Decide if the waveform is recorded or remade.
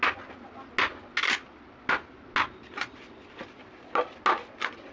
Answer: recorded